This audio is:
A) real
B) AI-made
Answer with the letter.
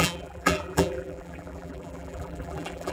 B